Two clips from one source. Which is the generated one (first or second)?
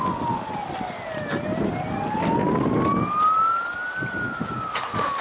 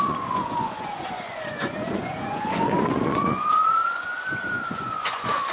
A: second